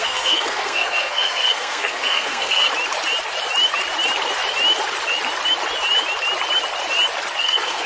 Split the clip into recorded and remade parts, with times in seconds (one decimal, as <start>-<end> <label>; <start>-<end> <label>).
0.0-2.7 remade; 2.7-7.4 recorded; 7.4-7.9 remade